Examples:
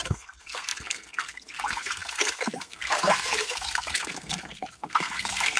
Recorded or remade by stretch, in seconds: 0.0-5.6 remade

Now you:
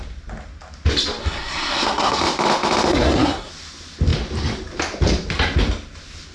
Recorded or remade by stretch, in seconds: 0.0-1.2 recorded; 1.2-2.2 remade; 2.2-2.9 recorded; 2.9-3.5 remade; 3.5-6.3 recorded

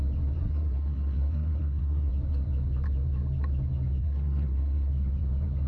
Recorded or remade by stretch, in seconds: 0.0-0.4 recorded; 0.4-2.1 remade; 2.1-4.0 recorded; 4.0-4.9 remade; 4.9-5.7 recorded

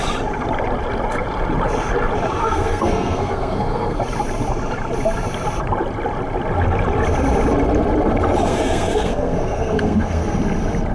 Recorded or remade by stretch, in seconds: 0.0-2.4 recorded; 2.4-4.0 remade; 4.0-8.5 recorded; 8.5-10.4 remade; 10.4-10.9 recorded

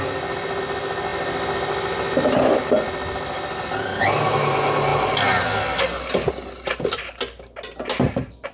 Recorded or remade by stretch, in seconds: 0.0-8.5 recorded